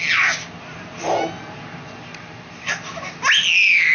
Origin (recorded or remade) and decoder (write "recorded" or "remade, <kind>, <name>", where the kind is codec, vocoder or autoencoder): recorded